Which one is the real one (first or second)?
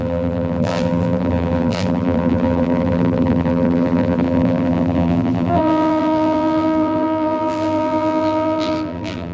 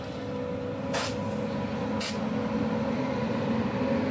second